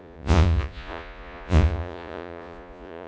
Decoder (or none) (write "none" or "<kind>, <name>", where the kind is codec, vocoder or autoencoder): vocoder, Vocos